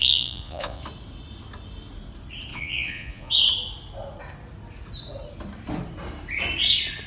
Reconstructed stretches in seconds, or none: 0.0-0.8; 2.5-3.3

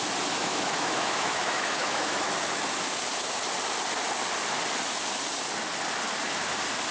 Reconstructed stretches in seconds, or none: 0.4-2.3

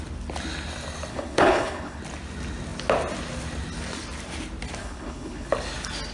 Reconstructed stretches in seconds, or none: 1.1-2.0; 4.8-5.5

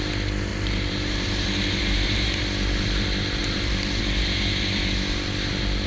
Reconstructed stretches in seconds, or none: 0.5-2.4; 3.4-4.0

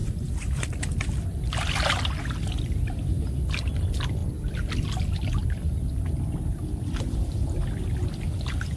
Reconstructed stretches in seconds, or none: 0.0-0.9